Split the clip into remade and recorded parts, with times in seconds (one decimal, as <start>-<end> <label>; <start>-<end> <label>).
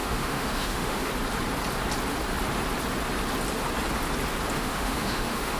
0.0-1.1 remade; 1.1-4.5 recorded; 4.5-5.6 remade